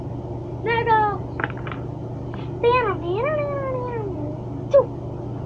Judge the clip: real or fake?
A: real